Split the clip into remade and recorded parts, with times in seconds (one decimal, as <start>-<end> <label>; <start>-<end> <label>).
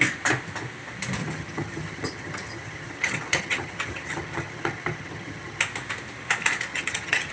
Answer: 0.0-1.2 recorded; 1.2-5.6 remade; 5.6-6.7 recorded; 6.7-7.3 remade